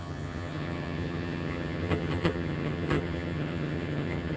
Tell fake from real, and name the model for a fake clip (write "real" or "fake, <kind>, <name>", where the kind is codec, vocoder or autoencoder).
fake, vocoder, HiFi-GAN